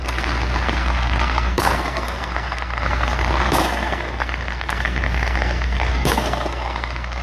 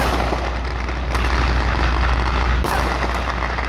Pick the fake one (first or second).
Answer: first